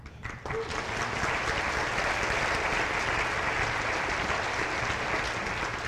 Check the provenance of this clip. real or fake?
real